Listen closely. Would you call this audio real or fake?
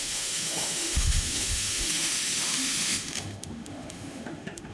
fake